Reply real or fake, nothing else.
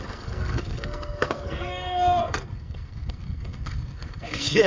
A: fake